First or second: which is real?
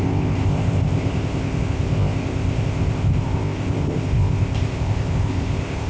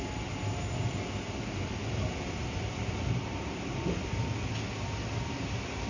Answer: second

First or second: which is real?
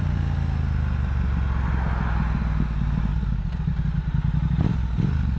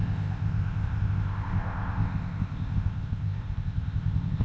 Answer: first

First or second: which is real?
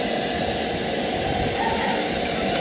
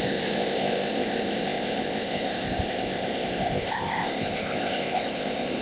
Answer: first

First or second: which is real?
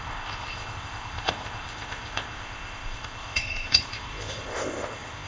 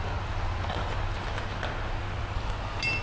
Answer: second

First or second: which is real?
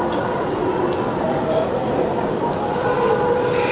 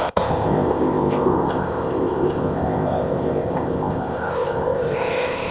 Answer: first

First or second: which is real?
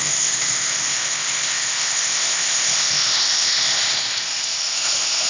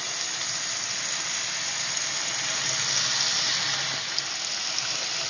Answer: second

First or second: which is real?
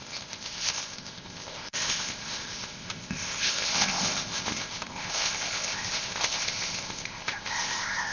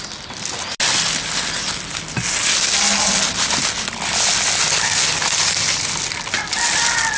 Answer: second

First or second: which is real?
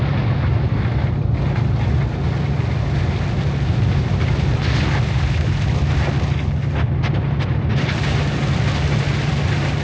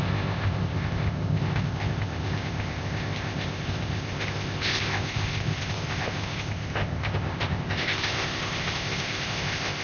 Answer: first